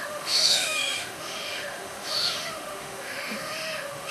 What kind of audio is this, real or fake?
fake